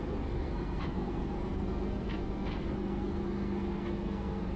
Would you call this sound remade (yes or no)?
yes